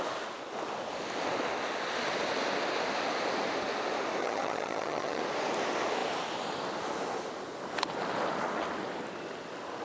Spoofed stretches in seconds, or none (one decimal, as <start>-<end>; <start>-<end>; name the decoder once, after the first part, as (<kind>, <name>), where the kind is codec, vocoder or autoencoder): 4.2-5.2 (vocoder, HiFi-GAN)

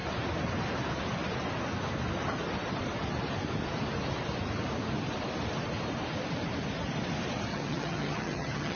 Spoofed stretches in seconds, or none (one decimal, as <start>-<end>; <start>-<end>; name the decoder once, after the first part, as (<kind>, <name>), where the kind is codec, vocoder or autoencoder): 7.5-8.8 (vocoder, HiFi-GAN)

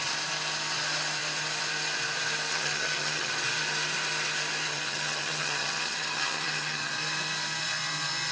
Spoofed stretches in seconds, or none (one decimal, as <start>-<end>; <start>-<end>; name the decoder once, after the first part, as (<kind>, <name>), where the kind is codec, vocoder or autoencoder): 2.5-3.3 (vocoder, HiFi-GAN); 4.7-6.9

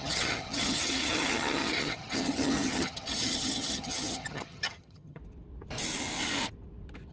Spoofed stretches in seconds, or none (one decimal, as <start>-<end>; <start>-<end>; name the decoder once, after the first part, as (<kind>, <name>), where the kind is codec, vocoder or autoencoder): 0.0-5.2 (vocoder, HiFi-GAN)

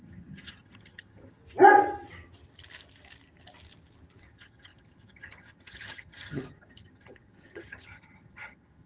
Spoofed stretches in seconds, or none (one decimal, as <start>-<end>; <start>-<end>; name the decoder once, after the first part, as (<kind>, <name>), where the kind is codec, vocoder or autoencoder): 0.0-1.4 (vocoder, HiFi-GAN); 4.2-8.9

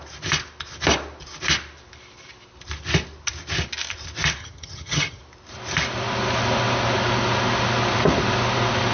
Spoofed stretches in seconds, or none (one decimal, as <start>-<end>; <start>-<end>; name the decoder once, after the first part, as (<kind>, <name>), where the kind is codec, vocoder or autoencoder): 4.4-5.2 (vocoder, HiFi-GAN)

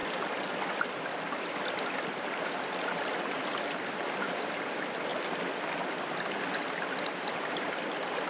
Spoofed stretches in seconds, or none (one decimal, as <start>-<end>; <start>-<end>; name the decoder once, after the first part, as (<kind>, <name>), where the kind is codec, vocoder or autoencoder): none